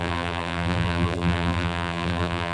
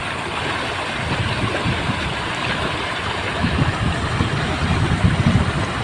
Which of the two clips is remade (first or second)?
first